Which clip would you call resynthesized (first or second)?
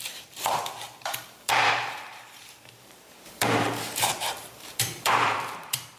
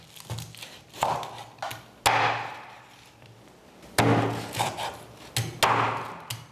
first